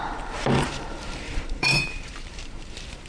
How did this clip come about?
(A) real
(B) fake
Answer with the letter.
B